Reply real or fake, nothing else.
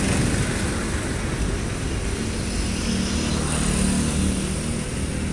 real